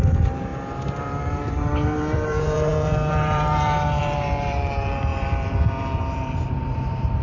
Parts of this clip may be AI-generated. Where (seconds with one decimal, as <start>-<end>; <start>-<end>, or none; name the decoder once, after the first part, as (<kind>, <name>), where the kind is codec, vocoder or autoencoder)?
0.0-7.2 (vocoder, BigVGAN v2)